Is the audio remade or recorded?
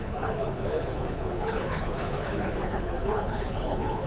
remade